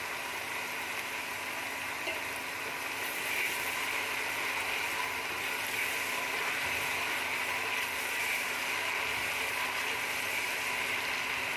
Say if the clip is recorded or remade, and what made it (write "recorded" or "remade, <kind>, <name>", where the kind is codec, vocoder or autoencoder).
recorded